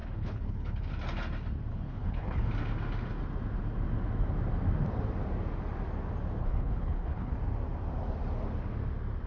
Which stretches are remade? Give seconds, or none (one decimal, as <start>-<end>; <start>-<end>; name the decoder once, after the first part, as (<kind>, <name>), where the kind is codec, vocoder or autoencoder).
0.0-0.9 (codec, HILCodec); 1.7-2.5; 6.4-7.3